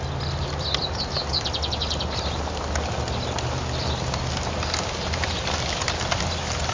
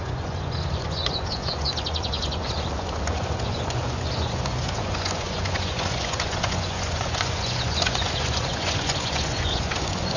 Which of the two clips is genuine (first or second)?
first